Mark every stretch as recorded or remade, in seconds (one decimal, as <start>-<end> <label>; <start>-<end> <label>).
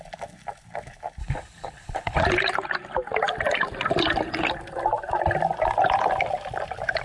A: 0.0-1.2 recorded; 1.2-2.2 remade; 2.2-7.0 recorded